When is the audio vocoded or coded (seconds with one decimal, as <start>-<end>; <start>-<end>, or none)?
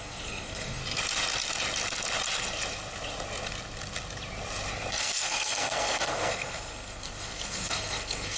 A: 0.0-0.8; 5.0-8.4